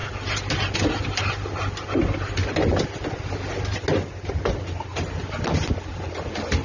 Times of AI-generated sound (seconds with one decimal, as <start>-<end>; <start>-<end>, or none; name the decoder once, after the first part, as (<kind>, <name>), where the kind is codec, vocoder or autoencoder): none